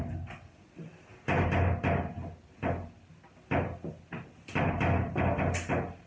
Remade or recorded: recorded